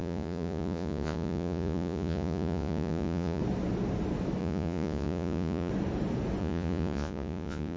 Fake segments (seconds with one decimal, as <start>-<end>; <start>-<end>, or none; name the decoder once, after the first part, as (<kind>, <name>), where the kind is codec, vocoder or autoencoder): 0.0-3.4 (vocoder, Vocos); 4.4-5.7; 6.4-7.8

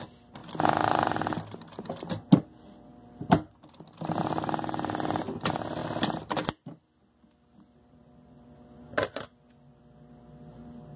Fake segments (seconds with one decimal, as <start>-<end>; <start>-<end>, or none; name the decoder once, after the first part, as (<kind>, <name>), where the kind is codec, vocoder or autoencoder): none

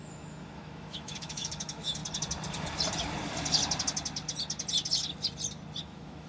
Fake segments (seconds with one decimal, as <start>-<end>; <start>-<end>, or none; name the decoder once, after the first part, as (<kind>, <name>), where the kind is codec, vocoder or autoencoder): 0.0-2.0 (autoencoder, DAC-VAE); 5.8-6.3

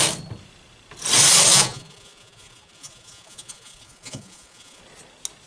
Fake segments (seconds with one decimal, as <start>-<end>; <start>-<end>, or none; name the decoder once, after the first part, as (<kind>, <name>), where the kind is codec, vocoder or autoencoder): 1.5-4.8 (vocoder, Vocos)

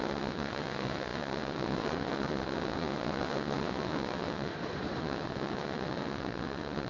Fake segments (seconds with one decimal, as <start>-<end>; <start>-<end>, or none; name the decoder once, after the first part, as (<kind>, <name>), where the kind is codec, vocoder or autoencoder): 0.0-4.5 (vocoder, WaveNeXt); 5.0-6.9

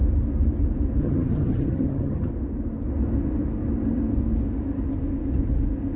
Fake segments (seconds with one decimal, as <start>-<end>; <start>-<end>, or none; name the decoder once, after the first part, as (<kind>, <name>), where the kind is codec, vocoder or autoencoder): 1.0-2.3 (vocoder, HiFi-GAN)